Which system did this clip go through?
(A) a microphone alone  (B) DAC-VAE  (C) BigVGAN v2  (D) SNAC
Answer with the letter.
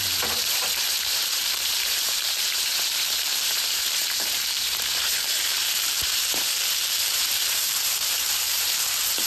C